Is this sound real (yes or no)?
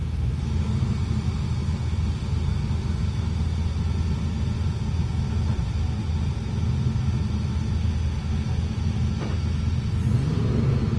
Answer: yes